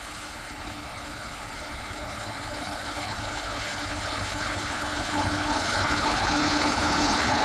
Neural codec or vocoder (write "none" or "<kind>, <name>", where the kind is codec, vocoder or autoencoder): codec, HILCodec